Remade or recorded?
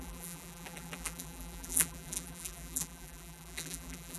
remade